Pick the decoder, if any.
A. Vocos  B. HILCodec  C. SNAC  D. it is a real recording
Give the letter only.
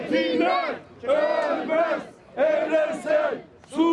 D